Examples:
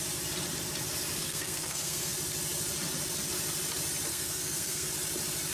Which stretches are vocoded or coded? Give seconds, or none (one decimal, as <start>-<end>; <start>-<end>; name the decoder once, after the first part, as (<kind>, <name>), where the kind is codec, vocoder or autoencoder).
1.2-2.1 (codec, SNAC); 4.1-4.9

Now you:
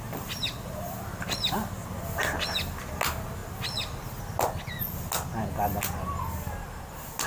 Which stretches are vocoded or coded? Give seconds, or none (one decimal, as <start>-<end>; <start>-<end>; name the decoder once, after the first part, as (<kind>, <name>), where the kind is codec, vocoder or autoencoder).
none

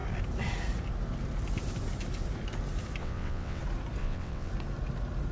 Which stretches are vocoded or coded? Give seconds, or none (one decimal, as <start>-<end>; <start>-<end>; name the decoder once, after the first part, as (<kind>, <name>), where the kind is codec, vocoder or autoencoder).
3.0-3.6 (vocoder, WaveNeXt); 4.0-4.5

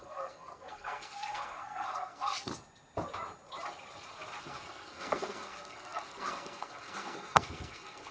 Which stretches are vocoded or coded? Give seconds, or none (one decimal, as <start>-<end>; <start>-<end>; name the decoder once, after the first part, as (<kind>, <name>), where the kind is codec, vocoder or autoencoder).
0.0-2.5 (codec, SNAC); 4.4-8.1